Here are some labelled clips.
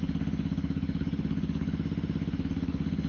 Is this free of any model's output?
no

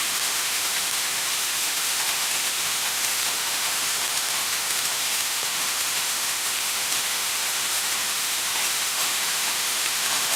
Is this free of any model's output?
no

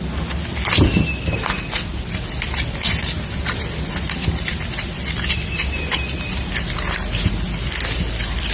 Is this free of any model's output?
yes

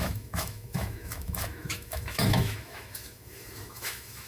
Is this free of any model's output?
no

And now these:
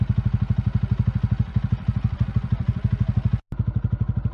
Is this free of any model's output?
yes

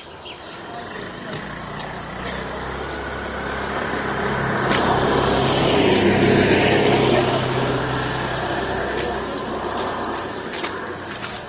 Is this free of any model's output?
yes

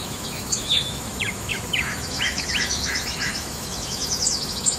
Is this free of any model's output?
no